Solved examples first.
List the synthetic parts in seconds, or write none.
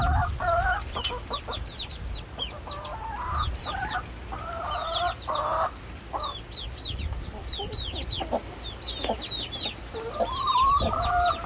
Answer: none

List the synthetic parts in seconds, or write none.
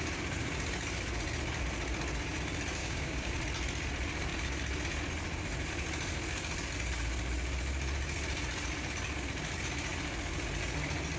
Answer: 2.8-3.3 (codec, DAC)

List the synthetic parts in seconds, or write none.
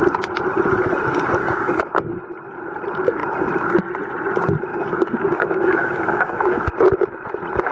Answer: 1.4-2.0 (codec, DAC); 4.7-6.6